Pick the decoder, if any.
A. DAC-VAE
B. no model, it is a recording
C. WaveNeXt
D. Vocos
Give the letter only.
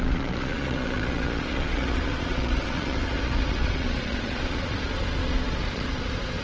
D